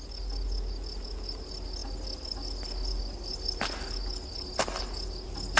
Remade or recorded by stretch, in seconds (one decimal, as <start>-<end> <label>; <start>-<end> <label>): 0.0-5.6 recorded